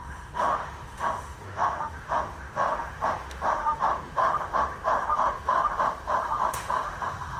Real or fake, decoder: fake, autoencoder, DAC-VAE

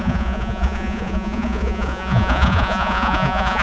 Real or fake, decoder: fake, vocoder, Vocos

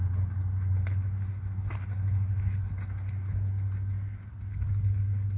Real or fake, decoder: real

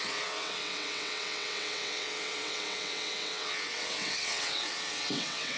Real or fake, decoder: fake, vocoder, WaveNeXt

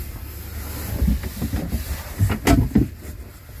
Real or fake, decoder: real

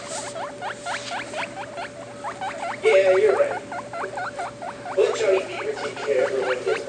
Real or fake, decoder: real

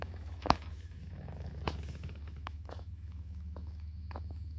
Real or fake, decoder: fake, autoencoder, DAC-VAE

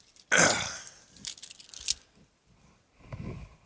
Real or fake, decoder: real